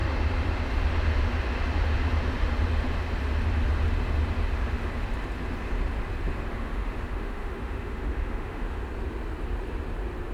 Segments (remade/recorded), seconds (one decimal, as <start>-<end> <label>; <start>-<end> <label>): 0.0-6.5 recorded; 6.5-8.8 remade; 8.8-10.3 recorded